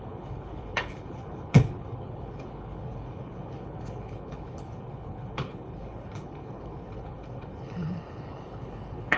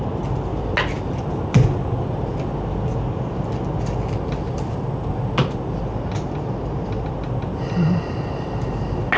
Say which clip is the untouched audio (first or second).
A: second